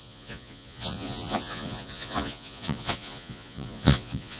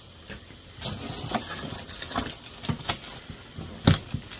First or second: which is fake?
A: first